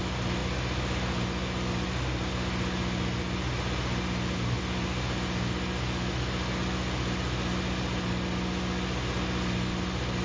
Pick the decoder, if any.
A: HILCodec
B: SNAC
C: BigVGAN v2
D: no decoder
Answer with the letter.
D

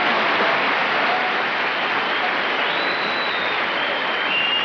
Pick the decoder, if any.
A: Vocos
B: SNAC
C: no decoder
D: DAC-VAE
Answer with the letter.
C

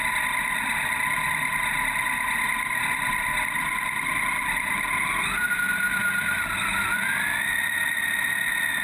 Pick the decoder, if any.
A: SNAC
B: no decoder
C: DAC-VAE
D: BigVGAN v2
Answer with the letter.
B